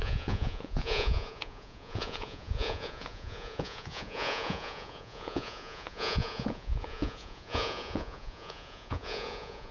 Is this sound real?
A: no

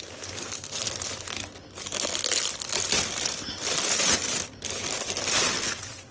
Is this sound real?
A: yes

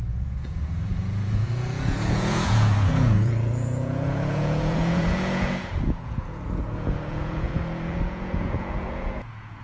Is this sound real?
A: no